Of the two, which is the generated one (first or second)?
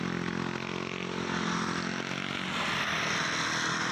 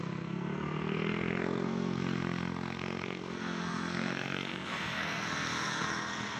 second